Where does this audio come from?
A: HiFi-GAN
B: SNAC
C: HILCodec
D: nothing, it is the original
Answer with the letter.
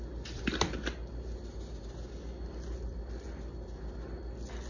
D